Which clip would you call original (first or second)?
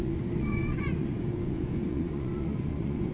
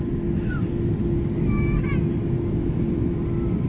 second